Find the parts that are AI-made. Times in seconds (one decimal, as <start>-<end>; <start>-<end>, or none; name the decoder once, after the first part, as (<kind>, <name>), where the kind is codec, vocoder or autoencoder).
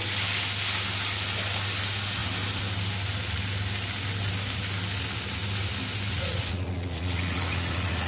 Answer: 6.1-8.1 (vocoder, Vocos)